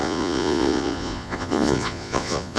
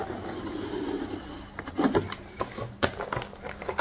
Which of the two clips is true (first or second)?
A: second